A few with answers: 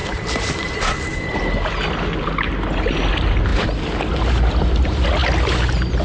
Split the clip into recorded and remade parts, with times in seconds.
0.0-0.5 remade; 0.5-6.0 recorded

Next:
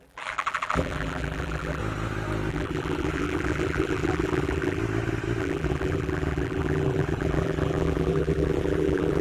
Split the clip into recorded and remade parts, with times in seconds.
0.0-1.8 remade; 1.8-2.5 recorded; 2.5-4.8 remade; 4.8-5.4 recorded; 5.4-9.2 remade

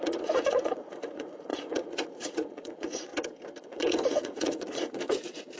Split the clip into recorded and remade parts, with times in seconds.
0.0-3.1 remade; 3.1-3.6 recorded; 3.6-5.6 remade

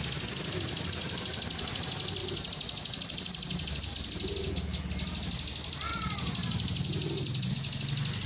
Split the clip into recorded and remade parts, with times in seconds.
0.0-2.2 recorded; 2.2-3.9 remade; 3.9-5.9 recorded; 5.9-7.5 remade; 7.5-8.3 recorded